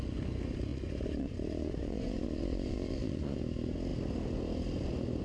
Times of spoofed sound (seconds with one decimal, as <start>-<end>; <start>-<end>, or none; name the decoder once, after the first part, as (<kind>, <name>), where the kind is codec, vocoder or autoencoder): 0.7-3.4 (vocoder, Vocos)